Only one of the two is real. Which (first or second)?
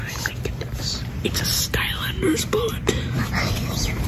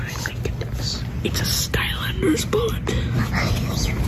second